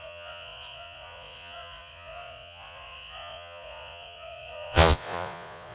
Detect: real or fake fake